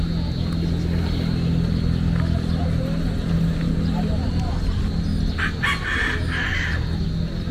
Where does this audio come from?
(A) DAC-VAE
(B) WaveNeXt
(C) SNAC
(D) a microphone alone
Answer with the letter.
D